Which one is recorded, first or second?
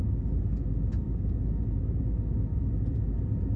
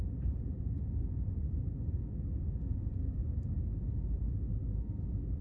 first